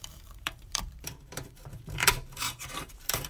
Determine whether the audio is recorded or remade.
remade